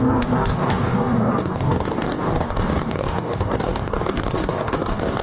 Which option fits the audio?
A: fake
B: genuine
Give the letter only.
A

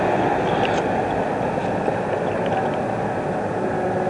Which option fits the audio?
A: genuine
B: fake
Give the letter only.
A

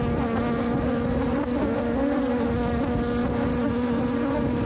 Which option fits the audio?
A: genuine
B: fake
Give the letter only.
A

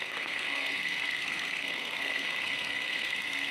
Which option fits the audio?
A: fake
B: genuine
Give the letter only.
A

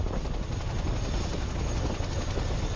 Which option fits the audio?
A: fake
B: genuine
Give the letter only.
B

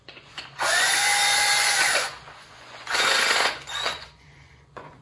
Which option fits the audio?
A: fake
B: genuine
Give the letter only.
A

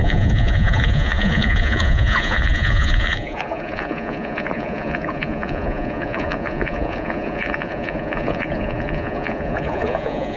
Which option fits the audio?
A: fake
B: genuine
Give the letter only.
A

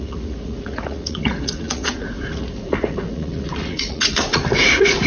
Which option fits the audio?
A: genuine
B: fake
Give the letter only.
B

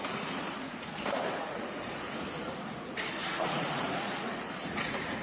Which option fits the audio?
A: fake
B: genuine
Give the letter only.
A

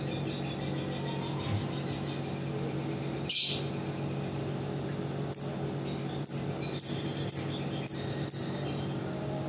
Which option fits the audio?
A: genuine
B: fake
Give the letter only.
A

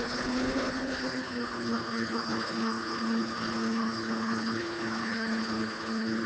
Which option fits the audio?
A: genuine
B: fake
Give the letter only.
B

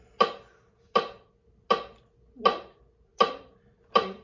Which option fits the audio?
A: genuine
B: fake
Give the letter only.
A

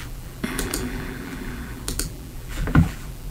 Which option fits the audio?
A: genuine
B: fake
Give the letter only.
B